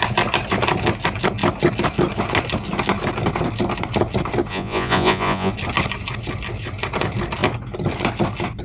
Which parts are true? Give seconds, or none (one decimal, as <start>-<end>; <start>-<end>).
0.0-4.5; 5.5-8.6